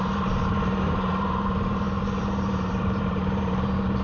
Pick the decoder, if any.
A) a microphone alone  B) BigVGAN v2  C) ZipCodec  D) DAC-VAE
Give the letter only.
B